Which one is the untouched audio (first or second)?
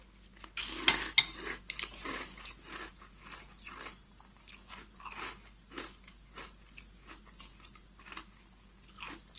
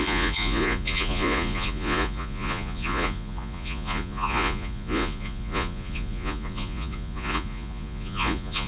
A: first